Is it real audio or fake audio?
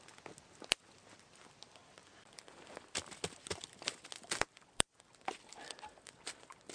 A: real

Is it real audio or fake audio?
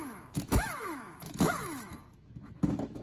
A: fake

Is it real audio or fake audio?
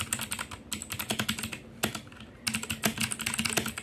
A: real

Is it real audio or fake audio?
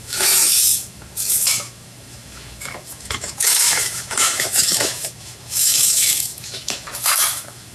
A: fake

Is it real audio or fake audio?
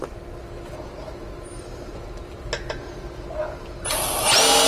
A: real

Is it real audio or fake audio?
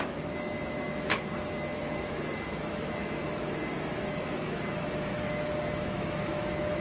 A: fake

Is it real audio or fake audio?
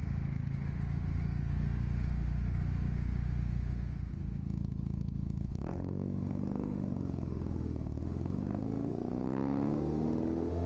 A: fake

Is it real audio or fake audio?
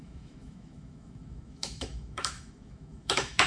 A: fake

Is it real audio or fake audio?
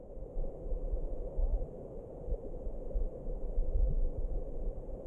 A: real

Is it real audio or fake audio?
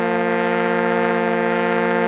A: fake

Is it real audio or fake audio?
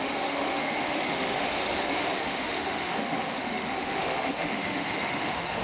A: fake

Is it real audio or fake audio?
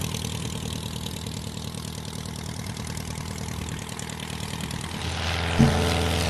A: real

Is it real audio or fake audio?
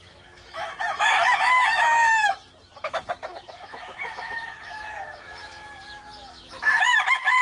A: fake